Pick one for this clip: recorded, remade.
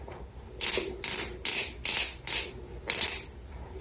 recorded